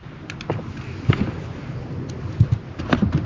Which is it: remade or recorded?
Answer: recorded